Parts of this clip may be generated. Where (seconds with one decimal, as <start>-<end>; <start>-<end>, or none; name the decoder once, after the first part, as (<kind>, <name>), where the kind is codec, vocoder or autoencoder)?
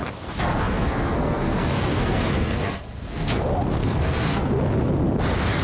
0.0-3.4 (codec, SNAC); 3.8-4.5